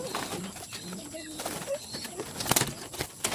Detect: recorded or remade recorded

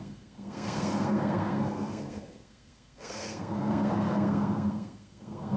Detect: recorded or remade remade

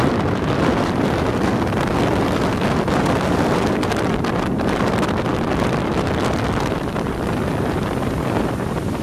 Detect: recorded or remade remade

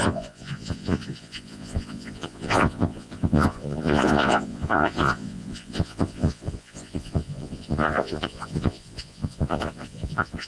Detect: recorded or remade remade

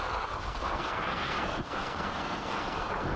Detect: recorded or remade remade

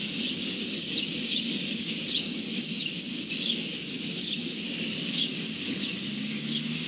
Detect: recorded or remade remade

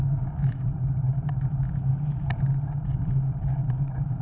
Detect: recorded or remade remade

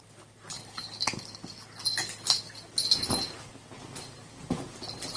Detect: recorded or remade recorded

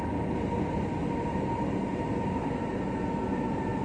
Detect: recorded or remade recorded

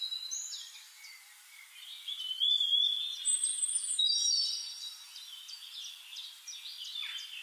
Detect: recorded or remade remade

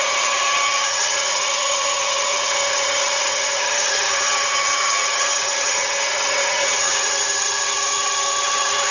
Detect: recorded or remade remade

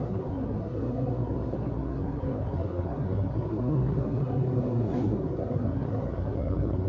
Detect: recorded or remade remade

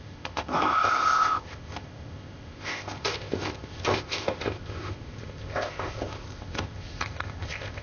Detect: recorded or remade remade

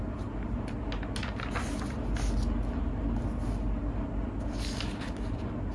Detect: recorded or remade recorded